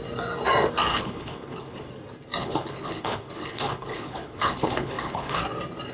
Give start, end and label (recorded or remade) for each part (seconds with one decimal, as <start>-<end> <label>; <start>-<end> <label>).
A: 0.0-0.9 recorded; 0.9-1.9 remade; 1.9-2.4 recorded; 2.4-5.4 remade; 5.4-5.9 recorded